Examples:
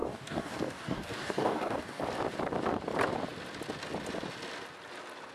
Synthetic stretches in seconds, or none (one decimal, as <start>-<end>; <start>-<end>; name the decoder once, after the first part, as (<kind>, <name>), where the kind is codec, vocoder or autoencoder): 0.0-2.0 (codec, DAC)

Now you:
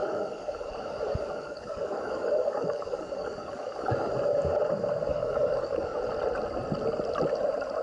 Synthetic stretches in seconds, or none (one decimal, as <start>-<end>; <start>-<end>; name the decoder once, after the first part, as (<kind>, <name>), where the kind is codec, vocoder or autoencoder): 0.0-4.1 (codec, DAC); 5.1-6.0

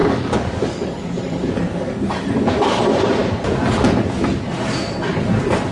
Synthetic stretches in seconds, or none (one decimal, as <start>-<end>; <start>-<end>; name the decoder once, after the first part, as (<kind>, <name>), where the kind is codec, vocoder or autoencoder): 0.0-2.1 (codec, DAC)

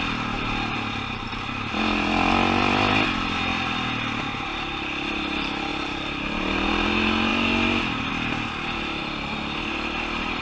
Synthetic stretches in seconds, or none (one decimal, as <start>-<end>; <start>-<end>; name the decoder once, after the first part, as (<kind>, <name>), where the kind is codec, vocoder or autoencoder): none

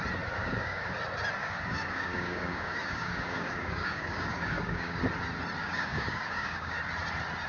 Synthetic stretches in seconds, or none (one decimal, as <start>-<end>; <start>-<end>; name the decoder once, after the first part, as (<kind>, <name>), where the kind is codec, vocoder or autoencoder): 0.4-0.9 (codec, DAC); 1.4-5.0; 5.6-6.8